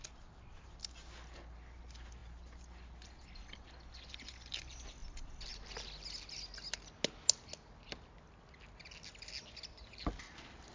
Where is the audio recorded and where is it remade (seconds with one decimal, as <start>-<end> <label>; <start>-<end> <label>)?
0.0-10.7 recorded